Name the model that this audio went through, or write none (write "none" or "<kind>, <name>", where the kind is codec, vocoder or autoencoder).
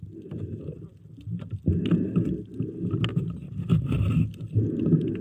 none